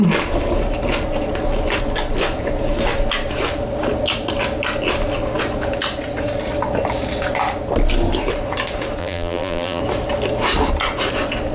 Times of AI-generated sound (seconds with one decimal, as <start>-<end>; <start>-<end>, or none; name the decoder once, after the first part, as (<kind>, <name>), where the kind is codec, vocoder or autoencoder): 9.0-9.8 (vocoder, BigVGAN v2)